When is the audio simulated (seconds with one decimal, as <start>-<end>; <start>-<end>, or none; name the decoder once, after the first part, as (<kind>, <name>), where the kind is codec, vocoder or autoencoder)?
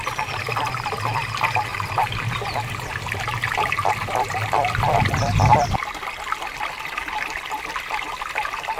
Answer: 1.7-3.7 (vocoder, BigVGAN v2)